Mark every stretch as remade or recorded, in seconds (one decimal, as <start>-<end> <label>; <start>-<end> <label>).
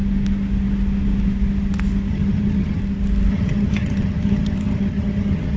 0.0-2.1 recorded; 2.1-2.8 remade; 2.8-3.3 recorded; 3.3-5.6 remade